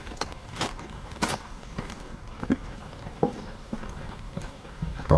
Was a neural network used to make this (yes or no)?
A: yes